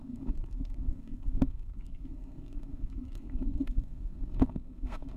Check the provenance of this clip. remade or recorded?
remade